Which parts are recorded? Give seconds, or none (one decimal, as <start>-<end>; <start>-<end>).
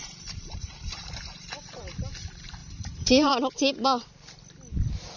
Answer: 1.9-2.6; 4.4-5.2